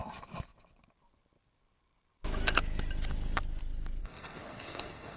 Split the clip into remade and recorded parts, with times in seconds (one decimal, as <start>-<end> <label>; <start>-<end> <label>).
0.0-4.0 recorded; 4.0-5.2 remade